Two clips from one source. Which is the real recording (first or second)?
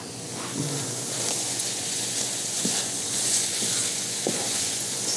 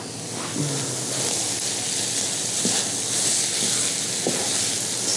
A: second